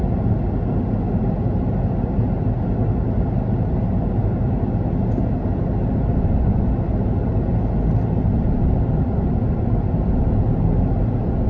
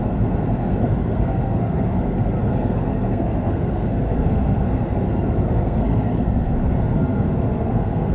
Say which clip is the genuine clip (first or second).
first